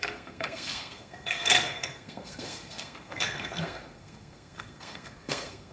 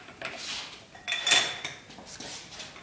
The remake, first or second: first